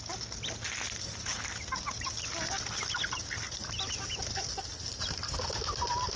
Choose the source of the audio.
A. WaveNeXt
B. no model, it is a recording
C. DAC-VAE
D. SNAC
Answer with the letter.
B